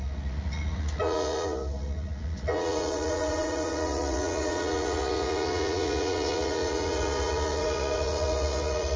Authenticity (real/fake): fake